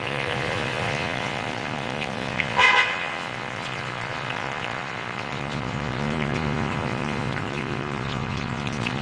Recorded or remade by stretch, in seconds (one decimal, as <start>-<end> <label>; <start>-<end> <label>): 0.0-9.0 remade